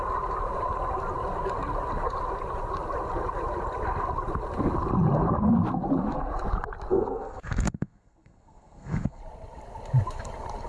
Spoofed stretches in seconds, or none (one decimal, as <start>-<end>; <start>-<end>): 6.9-9.2